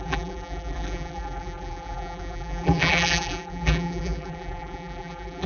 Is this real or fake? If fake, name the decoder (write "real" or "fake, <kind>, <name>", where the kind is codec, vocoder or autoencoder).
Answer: fake, vocoder, BigVGAN v2